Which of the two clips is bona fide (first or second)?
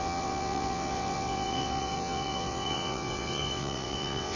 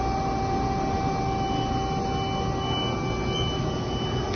second